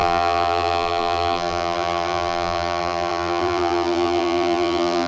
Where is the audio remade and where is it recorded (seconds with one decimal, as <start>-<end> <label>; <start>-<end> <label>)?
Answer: 0.0-5.1 remade